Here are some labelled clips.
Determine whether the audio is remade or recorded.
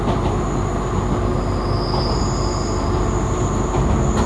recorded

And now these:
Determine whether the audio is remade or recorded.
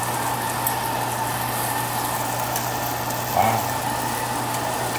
recorded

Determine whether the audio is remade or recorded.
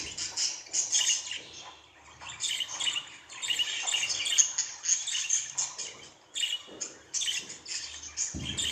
recorded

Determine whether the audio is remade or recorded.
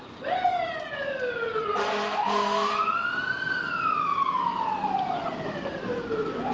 recorded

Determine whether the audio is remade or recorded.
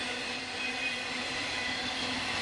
remade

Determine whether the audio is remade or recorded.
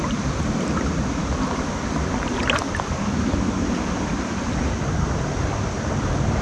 recorded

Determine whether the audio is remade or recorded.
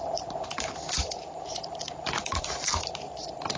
remade